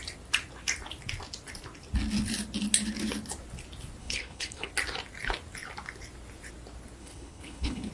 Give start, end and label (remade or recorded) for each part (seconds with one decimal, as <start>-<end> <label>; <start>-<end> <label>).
0.0-4.0 recorded; 4.0-4.7 remade; 4.7-7.0 recorded; 7.0-7.9 remade